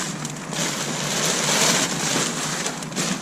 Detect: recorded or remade recorded